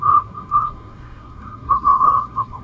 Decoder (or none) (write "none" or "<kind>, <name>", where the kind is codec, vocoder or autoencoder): codec, SNAC